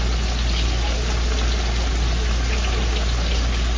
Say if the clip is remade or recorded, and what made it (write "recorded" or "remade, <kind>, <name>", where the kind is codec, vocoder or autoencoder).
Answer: recorded